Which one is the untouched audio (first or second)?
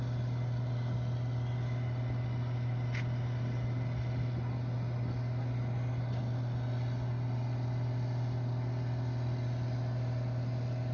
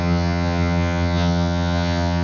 first